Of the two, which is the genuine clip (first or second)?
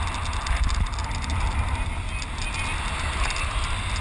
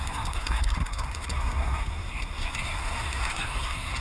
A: first